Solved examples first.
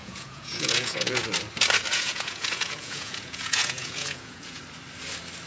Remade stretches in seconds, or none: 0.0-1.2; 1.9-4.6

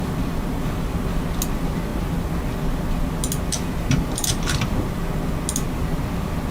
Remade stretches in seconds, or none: 3.8-4.7

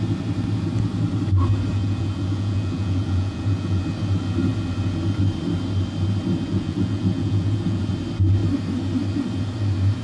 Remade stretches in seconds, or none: 1.8-3.8; 6.5-7.9

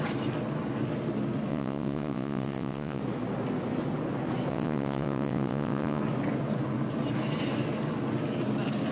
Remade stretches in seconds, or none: 1.5-3.0; 4.5-6.0

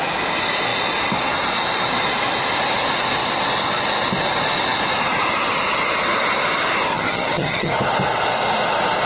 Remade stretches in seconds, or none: 6.9-7.7